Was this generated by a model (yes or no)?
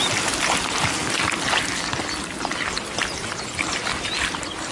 no